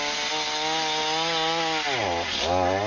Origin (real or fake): real